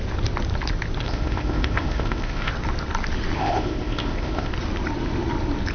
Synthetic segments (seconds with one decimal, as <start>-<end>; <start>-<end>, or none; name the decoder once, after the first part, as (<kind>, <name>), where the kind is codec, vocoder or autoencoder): 1.0-2.5 (codec, ZipCodec); 3.4-4.5